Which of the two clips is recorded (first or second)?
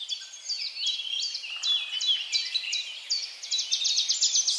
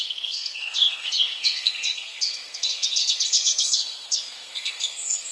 first